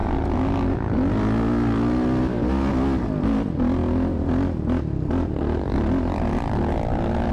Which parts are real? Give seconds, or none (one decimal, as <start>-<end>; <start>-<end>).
0.0-7.3